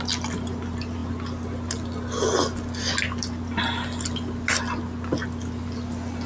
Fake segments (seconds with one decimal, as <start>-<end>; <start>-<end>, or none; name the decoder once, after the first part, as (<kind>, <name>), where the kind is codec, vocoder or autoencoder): none